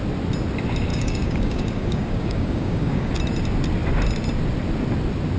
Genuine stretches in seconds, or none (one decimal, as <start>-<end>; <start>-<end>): 0.0-0.9; 3.1-5.4